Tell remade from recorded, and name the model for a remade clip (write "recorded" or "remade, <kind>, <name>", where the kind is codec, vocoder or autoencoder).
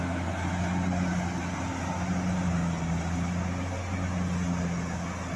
recorded